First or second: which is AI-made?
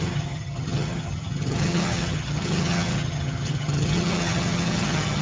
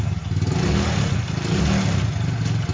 first